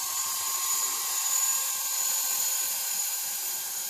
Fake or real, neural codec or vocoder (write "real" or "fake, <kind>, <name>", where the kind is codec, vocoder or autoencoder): fake, vocoder, BigVGAN v2